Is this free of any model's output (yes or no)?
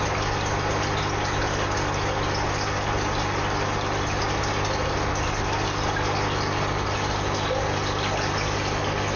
yes